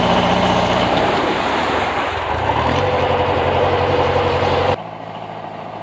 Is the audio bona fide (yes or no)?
no